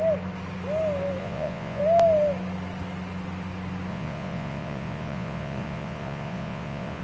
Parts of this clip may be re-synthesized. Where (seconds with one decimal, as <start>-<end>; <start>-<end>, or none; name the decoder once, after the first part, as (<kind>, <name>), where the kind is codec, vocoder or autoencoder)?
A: 1.2-1.8 (vocoder, Vocos); 3.9-7.0